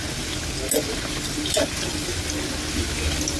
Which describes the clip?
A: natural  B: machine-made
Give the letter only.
A